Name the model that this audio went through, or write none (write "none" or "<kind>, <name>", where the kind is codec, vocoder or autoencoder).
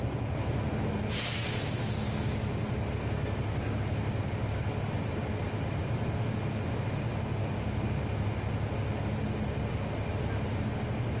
none